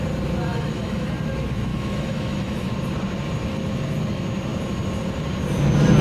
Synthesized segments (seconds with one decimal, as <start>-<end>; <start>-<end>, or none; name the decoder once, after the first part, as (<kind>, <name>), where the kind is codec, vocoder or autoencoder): 0.5-1.1 (autoencoder, DAC-VAE); 1.7-2.7